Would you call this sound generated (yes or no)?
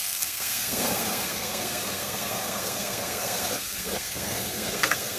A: yes